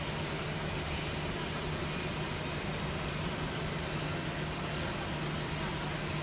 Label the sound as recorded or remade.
recorded